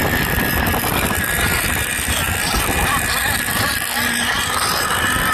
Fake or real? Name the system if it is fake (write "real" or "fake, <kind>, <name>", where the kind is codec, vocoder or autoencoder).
real